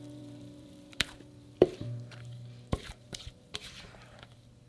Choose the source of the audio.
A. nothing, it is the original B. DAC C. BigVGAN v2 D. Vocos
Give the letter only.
C